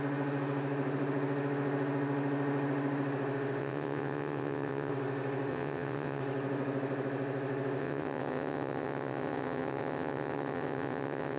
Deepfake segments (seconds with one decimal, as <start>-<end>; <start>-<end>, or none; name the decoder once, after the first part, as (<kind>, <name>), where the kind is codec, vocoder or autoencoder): 3.6-4.9 (vocoder, WaveNeXt); 5.5-6.2; 7.8-11.4